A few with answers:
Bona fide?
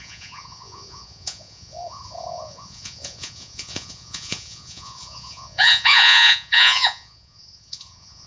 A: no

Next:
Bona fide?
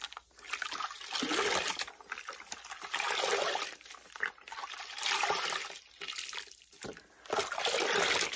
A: yes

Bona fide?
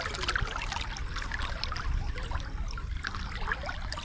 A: yes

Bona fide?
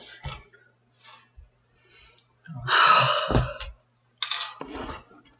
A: yes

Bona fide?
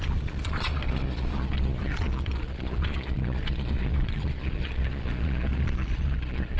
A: no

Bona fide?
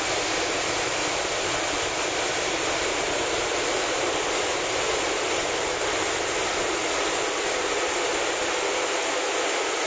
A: yes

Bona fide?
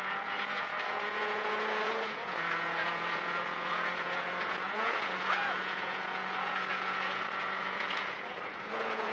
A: no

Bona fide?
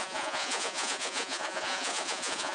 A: no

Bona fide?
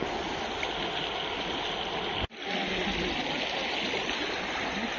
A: yes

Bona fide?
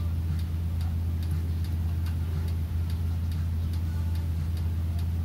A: yes